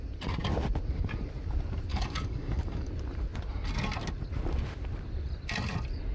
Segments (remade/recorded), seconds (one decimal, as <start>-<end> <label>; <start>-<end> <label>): 0.0-1.9 recorded; 1.9-2.9 remade; 2.9-6.1 recorded

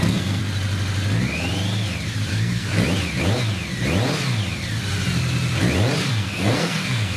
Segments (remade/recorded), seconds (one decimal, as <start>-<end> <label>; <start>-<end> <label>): 0.0-0.4 remade; 0.4-2.3 recorded; 2.3-2.8 remade; 2.8-6.1 recorded; 6.1-7.2 remade